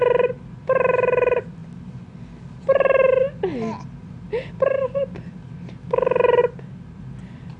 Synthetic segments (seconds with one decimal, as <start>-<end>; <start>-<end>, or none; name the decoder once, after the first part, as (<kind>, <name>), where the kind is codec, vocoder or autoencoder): none